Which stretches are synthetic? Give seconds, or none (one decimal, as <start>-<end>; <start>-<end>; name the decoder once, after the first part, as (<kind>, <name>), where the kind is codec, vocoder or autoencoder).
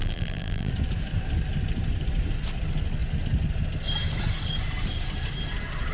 0.0-0.7 (vocoder, BigVGAN v2)